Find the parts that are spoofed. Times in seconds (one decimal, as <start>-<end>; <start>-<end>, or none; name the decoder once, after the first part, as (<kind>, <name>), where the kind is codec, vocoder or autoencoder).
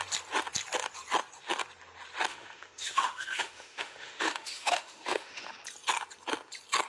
2.3-5.5 (autoencoder, DAC-VAE)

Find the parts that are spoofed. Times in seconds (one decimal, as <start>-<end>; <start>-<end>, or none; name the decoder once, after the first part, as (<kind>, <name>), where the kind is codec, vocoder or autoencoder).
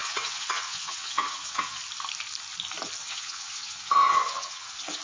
0.0-1.8 (vocoder, WaveNeXt); 3.0-5.0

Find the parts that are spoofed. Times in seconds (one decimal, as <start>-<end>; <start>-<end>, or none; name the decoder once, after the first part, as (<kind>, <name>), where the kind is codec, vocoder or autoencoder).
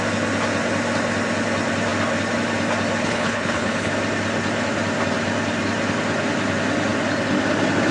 3.0-3.9 (codec, HILCodec)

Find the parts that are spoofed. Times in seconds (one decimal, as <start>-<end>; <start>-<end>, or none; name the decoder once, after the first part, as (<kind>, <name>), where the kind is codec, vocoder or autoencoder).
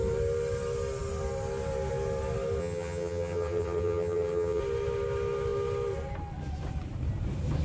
2.6-4.6 (vocoder, HiFi-GAN)